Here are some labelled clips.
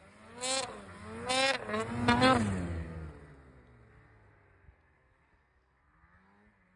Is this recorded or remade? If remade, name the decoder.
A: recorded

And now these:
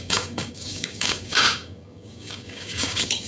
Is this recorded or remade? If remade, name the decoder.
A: remade, codec, DAC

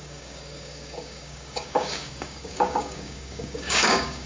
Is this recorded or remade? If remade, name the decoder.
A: remade, codec, DAC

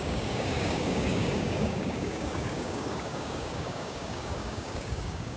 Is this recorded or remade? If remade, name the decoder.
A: remade, codec, DAC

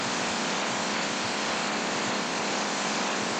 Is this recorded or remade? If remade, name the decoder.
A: remade, codec, DAC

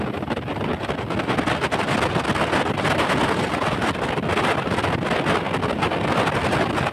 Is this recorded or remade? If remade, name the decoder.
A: recorded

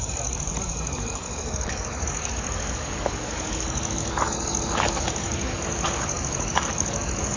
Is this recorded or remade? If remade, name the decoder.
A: remade, codec, DAC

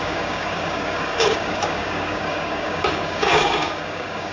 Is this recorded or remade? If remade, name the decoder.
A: remade, codec, DAC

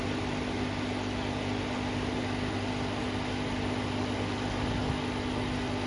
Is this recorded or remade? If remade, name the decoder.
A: recorded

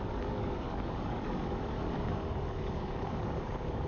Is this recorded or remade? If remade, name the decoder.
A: remade, codec, DAC